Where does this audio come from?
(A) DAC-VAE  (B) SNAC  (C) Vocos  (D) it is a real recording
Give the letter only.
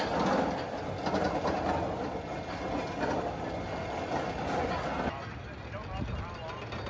D